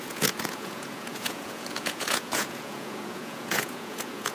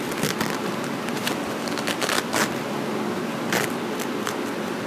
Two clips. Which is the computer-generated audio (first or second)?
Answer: first